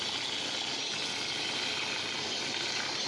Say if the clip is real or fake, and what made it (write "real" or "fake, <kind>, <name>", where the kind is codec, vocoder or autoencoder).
real